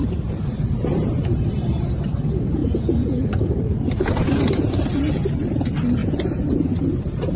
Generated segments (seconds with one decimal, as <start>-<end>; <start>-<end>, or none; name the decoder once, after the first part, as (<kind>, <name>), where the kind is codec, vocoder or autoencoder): 0.0-6.0 (vocoder, BigVGAN v2); 6.8-7.4